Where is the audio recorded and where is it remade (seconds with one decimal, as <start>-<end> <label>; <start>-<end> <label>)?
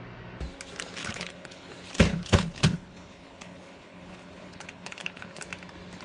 0.0-1.0 recorded; 1.0-1.7 remade; 1.7-2.1 recorded; 2.1-5.4 remade; 5.4-6.0 recorded